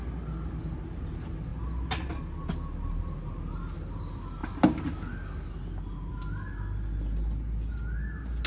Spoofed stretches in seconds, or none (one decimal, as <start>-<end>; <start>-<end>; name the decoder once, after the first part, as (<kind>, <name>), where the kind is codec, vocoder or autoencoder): none